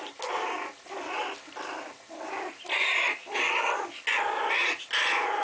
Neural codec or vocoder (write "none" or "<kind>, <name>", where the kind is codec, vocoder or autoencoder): none